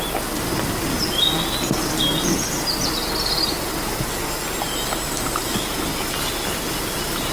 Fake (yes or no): no